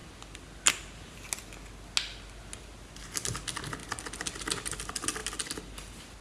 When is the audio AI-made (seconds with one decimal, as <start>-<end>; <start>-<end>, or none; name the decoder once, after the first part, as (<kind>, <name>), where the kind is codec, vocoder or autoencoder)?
none